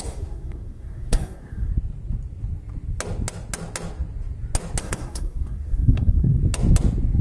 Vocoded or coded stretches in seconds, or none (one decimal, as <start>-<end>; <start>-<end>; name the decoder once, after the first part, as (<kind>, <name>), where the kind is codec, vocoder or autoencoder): 0.0-1.7 (codec, SNAC); 4.8-6.4